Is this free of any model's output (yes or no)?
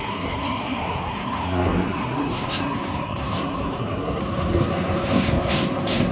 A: no